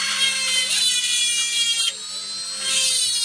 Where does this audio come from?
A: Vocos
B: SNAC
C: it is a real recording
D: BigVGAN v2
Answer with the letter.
C